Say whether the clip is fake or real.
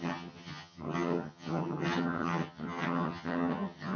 fake